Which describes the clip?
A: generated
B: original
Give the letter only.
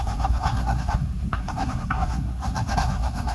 A